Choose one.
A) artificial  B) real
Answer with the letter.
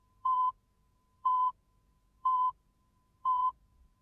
A